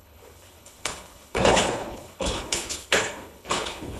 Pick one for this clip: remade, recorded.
remade